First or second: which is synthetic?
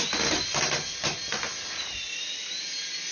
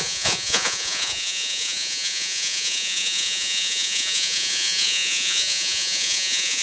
second